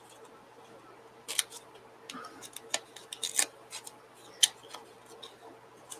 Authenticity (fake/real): real